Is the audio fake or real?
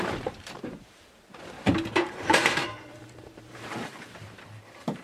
fake